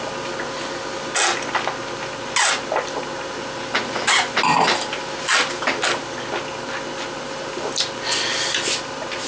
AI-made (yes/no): no